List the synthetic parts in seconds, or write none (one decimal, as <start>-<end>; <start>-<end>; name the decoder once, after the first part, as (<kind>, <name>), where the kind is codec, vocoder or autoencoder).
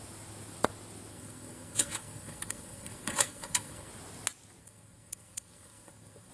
1.1-3.9 (codec, SNAC); 4.6-6.3